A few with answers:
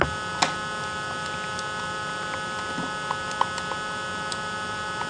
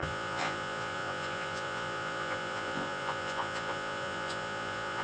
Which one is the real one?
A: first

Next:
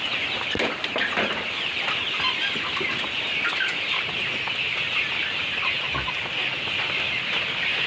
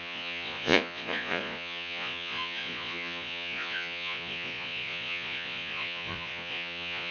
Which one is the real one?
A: first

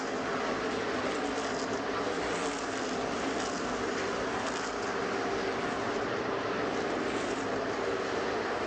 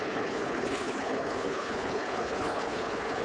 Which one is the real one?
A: first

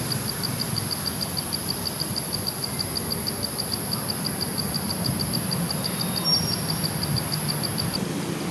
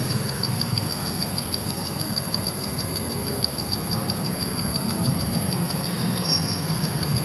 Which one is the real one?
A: first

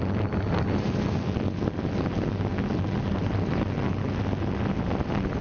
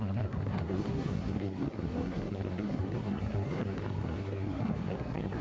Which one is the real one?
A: first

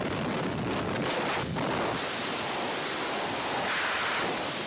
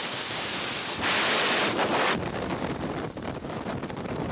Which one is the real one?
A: first